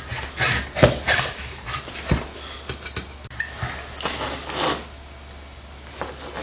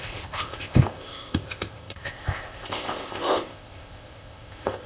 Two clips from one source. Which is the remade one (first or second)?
second